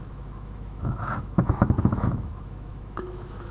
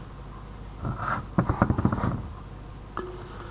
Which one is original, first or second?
second